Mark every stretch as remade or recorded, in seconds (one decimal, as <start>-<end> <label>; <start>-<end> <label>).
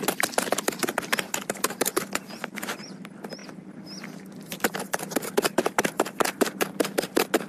0.0-7.5 recorded